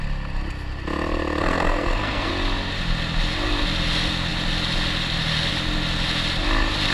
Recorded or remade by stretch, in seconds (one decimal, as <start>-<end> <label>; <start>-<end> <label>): 0.0-1.4 recorded; 1.4-2.3 remade; 2.3-6.9 recorded